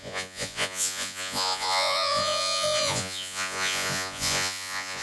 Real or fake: fake